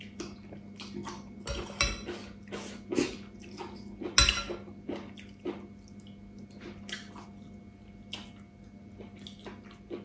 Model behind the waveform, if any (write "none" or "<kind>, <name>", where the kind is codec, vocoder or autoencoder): none